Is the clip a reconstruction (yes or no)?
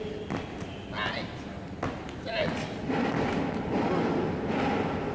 no